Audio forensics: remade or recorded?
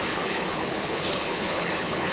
remade